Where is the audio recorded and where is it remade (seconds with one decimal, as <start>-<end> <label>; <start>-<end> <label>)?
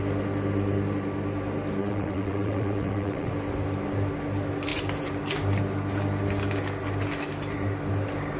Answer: 0.0-1.8 recorded; 1.8-3.3 remade; 3.3-8.4 recorded